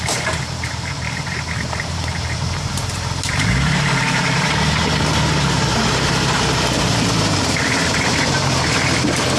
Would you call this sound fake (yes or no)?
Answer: yes